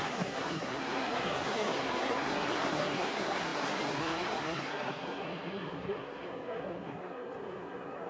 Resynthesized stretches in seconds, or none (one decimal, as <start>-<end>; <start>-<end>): 0.0-8.1